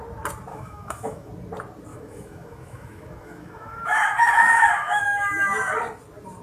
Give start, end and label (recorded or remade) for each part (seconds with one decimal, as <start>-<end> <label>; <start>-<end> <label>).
0.0-0.5 recorded; 0.5-1.3 remade; 1.3-1.9 recorded; 1.9-5.7 remade; 5.7-6.4 recorded